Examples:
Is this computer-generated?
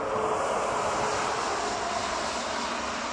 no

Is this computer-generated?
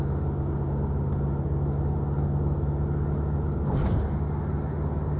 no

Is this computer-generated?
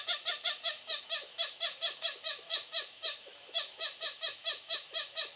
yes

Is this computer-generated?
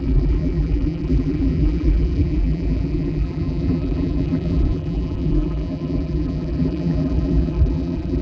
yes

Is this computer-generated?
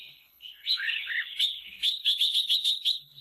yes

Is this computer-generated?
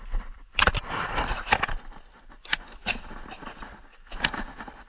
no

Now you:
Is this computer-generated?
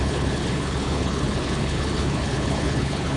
yes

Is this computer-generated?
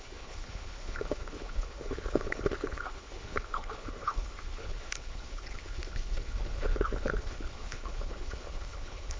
yes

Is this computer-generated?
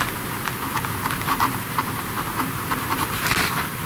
yes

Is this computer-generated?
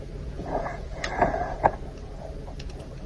yes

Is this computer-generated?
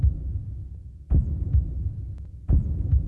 no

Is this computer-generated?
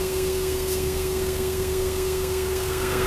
yes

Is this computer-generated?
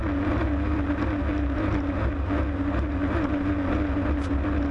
no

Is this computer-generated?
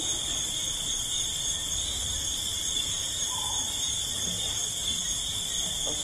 yes